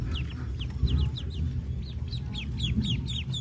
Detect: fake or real real